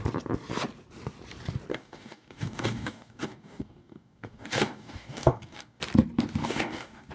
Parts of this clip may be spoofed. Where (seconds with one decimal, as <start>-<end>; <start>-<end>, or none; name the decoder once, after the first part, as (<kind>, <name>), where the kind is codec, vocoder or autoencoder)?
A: 1.7-5.8 (codec, DAC); 6.4-7.1